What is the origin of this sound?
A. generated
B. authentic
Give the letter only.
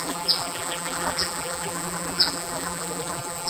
A